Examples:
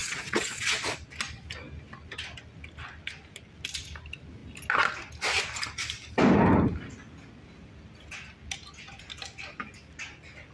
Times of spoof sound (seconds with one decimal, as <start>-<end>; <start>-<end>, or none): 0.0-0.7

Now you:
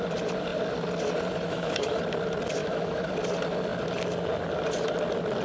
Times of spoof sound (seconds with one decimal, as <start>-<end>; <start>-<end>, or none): 1.5-2.0; 2.6-3.1

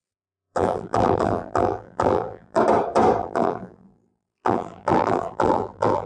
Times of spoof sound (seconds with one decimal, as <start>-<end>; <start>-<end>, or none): 0.0-2.6; 3.2-6.1

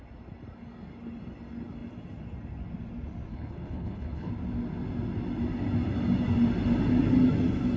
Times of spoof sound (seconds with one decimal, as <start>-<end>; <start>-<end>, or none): 3.3-4.3

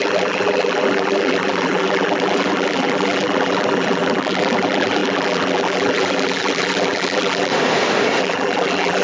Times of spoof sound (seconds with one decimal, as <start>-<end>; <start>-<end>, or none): 0.0-7.5; 8.2-9.0

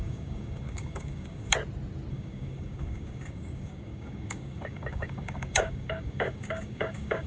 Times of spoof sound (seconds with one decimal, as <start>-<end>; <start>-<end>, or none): 0.0-1.5; 2.1-7.3